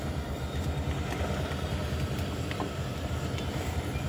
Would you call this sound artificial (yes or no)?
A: no